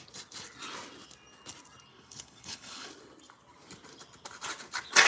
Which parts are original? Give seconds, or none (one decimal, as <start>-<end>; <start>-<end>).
0.0-1.9; 2.9-5.1